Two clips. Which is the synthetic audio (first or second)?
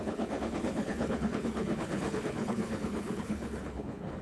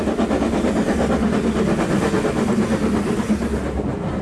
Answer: first